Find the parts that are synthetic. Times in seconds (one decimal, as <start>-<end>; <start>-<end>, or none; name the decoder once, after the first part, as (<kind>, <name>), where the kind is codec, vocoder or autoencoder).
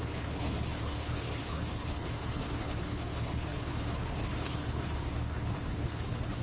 0.0-6.4 (codec, HILCodec)